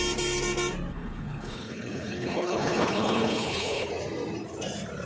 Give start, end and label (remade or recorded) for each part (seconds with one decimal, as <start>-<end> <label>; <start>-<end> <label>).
0.0-0.9 recorded; 0.9-3.9 remade; 3.9-5.0 recorded